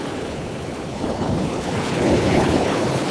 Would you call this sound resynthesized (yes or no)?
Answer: yes